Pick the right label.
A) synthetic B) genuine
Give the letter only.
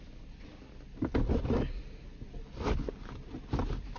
B